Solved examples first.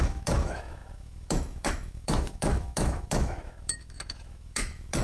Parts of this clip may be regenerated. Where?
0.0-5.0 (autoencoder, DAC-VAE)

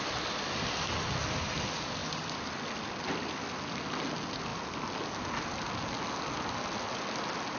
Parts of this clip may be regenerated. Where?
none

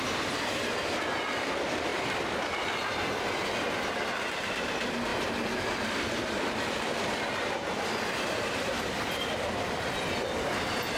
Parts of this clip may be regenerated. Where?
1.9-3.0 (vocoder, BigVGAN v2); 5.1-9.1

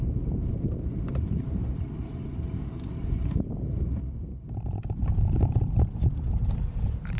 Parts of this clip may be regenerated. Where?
0.0-3.9 (vocoder, BigVGAN v2); 5.1-7.2

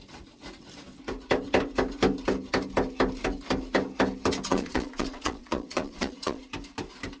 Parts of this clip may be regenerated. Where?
4.5-6.4 (vocoder, Vocos)

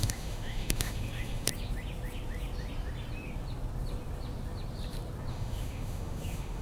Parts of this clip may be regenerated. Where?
0.0-1.5 (autoencoder, DAC-VAE); 5.3-6.6

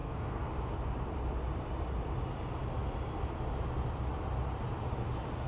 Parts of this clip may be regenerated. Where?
0.0-0.5 (codec, SNAC)

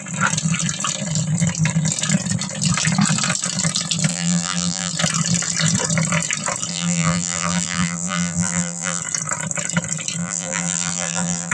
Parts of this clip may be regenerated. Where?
4.1-4.9 (vocoder, BigVGAN v2); 6.7-9.0; 10.2-11.5